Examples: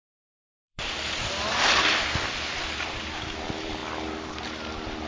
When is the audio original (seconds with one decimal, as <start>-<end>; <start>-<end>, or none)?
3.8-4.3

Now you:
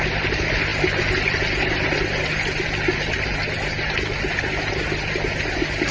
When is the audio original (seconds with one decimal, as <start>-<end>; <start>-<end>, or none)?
0.0-5.9

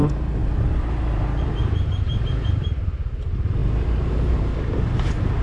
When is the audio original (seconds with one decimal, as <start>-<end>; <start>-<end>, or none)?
none

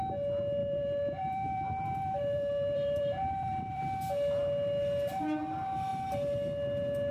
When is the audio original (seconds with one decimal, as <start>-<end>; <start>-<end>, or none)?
0.0-0.6; 3.8-7.1

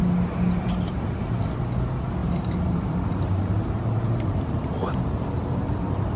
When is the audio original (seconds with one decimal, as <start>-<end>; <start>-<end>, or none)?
0.0-2.2

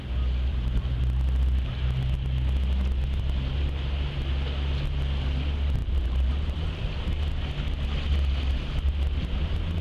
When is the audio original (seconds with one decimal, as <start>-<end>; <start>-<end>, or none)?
0.0-0.5; 1.0-5.8; 6.8-9.8